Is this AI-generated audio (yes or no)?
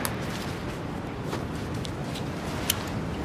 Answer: no